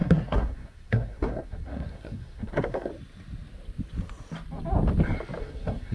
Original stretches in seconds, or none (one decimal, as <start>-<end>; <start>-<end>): 2.9-5.4